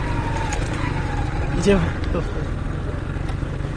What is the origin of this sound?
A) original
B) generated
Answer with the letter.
A